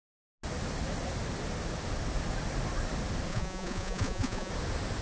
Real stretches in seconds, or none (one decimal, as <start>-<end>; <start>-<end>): 0.0-3.3; 4.5-5.0